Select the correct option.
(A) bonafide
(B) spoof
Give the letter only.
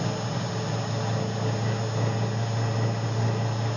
A